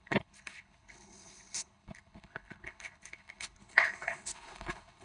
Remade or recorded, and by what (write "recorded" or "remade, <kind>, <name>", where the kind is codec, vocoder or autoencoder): remade, codec, HILCodec